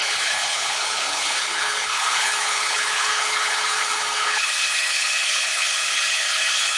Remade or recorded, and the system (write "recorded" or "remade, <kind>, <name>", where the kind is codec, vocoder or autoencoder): remade, codec, HILCodec